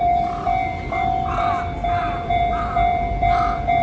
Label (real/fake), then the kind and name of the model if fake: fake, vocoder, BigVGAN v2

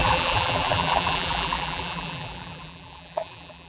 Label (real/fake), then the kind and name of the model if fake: fake, vocoder, BigVGAN v2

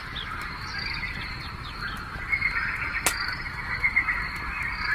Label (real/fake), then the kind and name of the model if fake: real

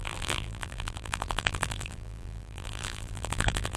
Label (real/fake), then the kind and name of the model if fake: fake, vocoder, BigVGAN v2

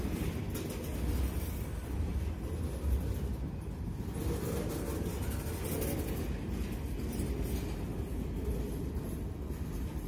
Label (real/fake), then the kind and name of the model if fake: real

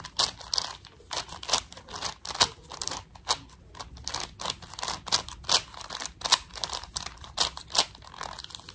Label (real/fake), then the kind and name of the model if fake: real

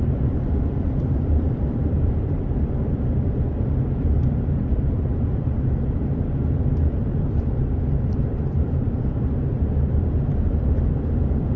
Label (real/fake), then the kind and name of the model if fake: fake, vocoder, BigVGAN v2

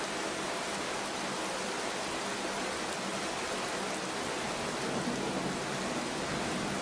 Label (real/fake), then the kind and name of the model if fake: real